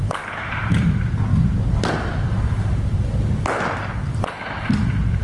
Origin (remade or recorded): recorded